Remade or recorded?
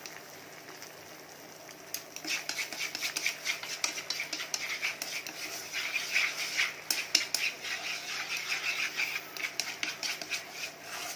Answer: recorded